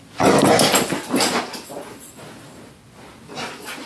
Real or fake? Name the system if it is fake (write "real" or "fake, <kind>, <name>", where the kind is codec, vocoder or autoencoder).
real